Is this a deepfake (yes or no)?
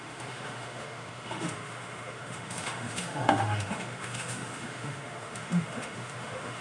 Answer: yes